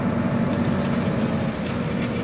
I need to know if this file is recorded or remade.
recorded